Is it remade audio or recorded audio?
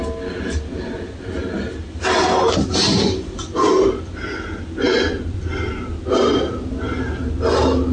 recorded